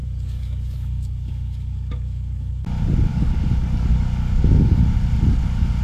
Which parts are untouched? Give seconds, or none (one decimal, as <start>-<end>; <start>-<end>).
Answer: 2.6-3.1; 4.8-5.8